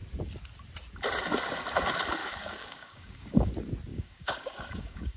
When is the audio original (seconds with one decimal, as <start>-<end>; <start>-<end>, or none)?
0.0-2.2; 3.5-3.9